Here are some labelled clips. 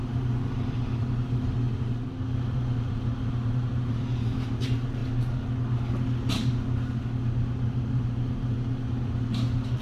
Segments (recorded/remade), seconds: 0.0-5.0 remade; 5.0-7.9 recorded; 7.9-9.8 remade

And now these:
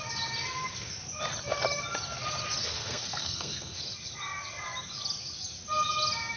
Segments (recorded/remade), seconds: 0.0-2.6 recorded; 2.6-3.8 remade; 3.8-6.4 recorded

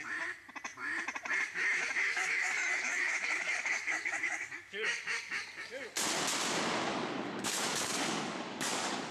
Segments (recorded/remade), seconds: 0.0-2.0 recorded; 2.0-5.0 remade; 5.0-6.9 recorded; 6.9-9.1 remade